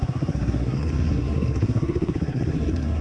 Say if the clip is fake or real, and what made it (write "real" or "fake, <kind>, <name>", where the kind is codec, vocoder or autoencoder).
fake, codec, SNAC